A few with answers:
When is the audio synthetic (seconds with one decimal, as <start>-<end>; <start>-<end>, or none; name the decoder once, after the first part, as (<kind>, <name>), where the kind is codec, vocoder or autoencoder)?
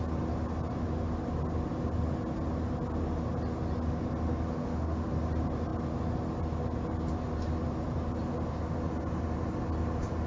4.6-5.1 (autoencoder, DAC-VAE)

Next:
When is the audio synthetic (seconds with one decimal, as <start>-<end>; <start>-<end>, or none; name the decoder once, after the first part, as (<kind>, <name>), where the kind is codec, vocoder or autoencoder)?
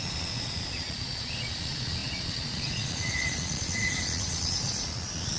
0.0-5.4 (vocoder, Vocos)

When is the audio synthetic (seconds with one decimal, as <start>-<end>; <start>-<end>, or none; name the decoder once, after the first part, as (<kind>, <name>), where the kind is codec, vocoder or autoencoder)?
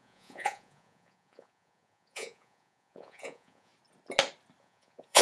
0.0-3.7 (vocoder, Vocos); 4.6-5.2